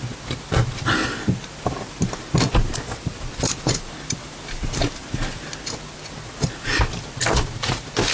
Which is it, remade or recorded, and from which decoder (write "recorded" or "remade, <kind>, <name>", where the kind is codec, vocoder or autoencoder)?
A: recorded